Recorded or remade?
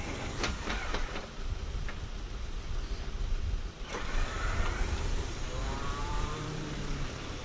remade